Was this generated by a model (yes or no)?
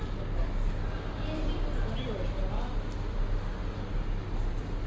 no